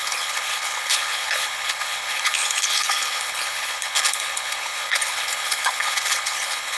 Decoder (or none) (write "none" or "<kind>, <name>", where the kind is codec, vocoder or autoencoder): codec, HILCodec